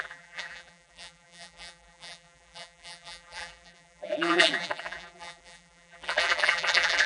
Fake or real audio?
fake